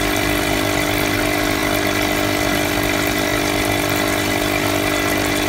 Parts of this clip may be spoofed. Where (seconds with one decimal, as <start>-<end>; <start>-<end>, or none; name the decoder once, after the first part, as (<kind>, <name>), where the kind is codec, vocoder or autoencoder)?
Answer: none